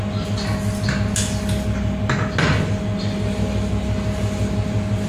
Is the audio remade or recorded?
recorded